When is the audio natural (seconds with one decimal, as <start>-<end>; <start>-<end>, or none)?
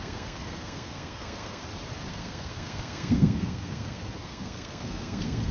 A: 1.6-2.1